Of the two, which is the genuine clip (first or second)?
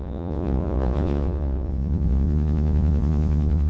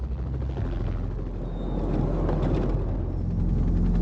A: second